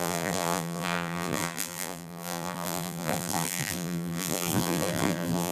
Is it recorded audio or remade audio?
remade